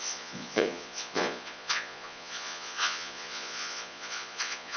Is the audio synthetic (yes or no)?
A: yes